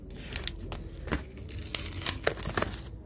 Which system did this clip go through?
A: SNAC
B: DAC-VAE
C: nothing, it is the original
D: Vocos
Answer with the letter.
C